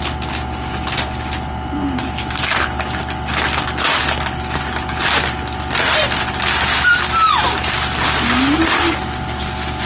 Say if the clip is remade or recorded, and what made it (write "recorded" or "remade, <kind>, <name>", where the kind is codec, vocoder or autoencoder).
recorded